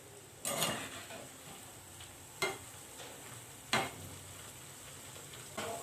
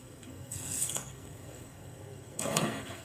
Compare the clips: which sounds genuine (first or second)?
first